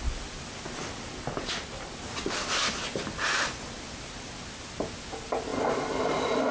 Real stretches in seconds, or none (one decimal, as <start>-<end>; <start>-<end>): 0.0-6.5